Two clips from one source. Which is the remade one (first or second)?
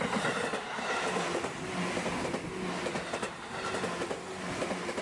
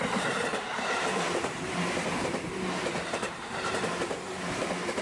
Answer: second